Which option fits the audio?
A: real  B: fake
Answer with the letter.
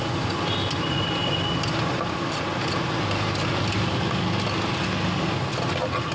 A